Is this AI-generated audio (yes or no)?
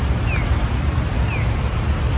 no